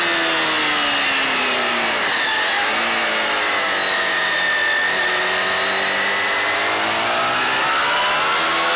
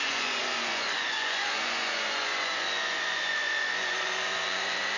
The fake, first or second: second